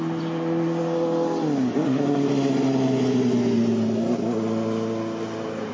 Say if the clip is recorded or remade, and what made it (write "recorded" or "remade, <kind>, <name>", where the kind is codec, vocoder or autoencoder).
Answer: recorded